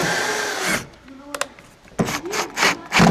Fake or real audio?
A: real